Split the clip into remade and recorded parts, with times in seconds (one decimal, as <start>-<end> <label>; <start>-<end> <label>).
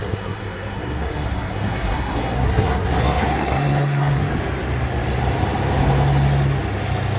0.0-4.3 remade; 4.3-7.2 recorded